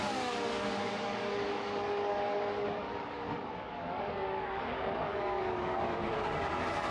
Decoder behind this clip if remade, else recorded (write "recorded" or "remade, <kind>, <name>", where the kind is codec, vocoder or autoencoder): remade, codec, DAC